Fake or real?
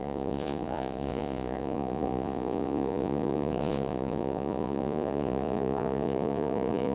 fake